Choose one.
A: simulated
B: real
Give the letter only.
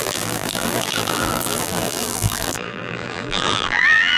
A